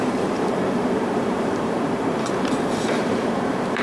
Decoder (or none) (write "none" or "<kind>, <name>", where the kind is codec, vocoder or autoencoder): vocoder, BigVGAN v2